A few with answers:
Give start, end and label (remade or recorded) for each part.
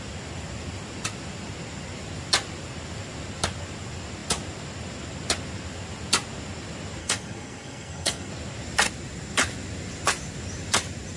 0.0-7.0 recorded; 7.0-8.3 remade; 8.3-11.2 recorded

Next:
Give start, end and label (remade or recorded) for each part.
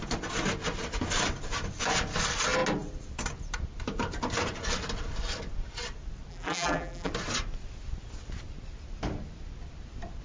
0.0-6.3 recorded; 6.3-7.1 remade; 7.1-10.2 recorded